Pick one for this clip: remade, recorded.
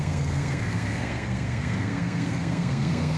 remade